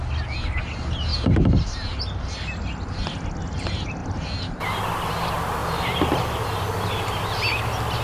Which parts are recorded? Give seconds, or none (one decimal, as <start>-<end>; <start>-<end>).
0.0-4.0; 4.8-8.0